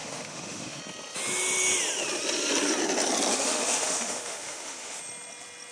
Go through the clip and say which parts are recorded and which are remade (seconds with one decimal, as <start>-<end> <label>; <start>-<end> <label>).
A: 0.0-0.8 remade; 0.8-3.3 recorded; 3.3-5.0 remade; 5.0-5.7 recorded